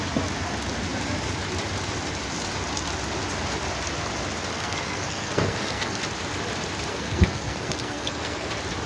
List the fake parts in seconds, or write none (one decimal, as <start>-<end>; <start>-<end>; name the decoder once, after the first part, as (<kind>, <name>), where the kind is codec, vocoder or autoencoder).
4.5-6.0 (codec, SNAC); 6.9-8.5

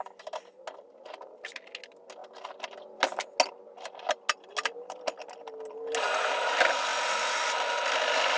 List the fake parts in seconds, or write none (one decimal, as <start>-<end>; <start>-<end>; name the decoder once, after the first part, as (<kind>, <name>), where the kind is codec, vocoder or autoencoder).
none

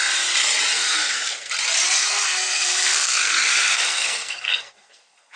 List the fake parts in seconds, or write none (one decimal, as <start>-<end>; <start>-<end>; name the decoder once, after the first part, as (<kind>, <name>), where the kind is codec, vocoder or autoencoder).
0.7-1.5 (codec, SNAC); 2.0-5.4

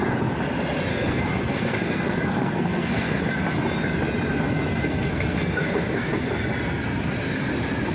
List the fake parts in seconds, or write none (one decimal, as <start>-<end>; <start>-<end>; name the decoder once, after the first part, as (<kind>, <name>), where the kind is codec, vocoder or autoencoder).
0.9-3.2 (codec, SNAC); 4.8-6.3

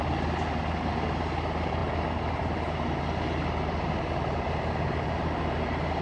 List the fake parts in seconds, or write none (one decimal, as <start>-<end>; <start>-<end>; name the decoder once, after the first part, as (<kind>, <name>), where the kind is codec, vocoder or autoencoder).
none

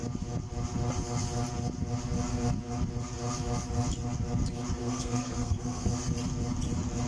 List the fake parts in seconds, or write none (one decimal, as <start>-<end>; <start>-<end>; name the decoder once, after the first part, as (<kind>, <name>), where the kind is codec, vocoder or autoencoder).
4.8-5.9 (codec, SNAC)

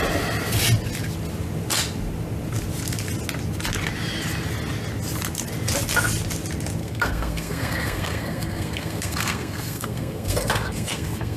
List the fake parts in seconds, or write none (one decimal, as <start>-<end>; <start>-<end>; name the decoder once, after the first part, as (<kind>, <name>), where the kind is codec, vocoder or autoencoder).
6.8-11.4 (codec, SNAC)

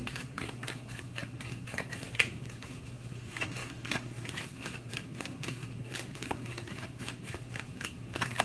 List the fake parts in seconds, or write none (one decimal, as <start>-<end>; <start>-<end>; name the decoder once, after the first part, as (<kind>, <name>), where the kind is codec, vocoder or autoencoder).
0.0-8.4 (codec, SNAC)